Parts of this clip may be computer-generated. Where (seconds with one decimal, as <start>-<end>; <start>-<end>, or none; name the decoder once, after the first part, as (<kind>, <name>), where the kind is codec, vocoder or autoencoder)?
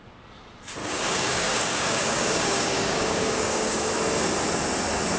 0.8-3.9 (codec, DAC)